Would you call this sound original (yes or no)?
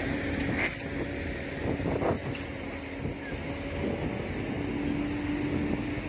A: yes